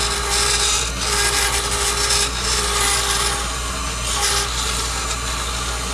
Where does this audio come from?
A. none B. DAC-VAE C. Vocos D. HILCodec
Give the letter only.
A